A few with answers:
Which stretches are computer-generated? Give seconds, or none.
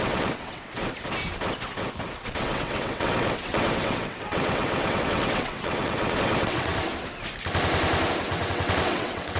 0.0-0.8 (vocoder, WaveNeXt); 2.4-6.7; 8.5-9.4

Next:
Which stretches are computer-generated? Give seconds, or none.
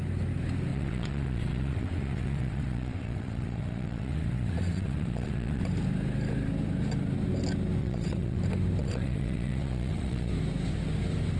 0.7-5.6 (vocoder, WaveNeXt); 7.8-8.4; 8.8-10.3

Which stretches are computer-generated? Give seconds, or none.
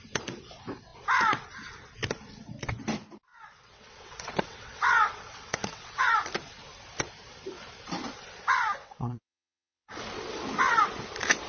3.3-6.0 (vocoder, WaveNeXt); 8.8-9.9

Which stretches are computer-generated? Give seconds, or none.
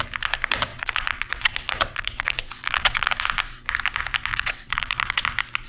0.7-3.1 (vocoder, WaveNeXt); 4.3-5.2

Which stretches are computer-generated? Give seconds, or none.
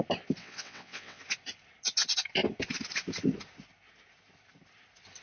0.4-1.2 (vocoder, WaveNeXt)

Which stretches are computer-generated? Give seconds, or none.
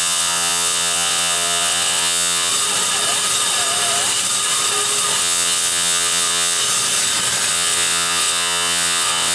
0.0-2.5 (vocoder, WaveNeXt); 5.2-6.6; 7.5-9.3